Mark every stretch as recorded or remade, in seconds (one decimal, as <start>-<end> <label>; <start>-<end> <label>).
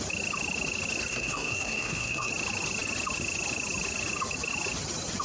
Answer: 0.0-1.1 recorded; 1.1-2.3 remade; 2.3-5.2 recorded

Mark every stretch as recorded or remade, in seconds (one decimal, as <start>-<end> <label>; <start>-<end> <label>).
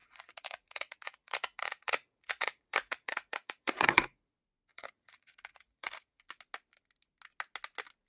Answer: 0.0-4.2 remade; 4.2-4.7 recorded; 4.7-6.2 remade; 6.2-8.1 recorded